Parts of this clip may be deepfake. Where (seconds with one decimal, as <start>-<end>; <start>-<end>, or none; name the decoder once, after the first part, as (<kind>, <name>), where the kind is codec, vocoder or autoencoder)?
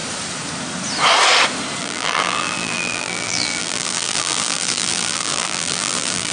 1.8-6.3 (vocoder, BigVGAN v2)